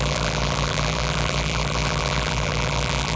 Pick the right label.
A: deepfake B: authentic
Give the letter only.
A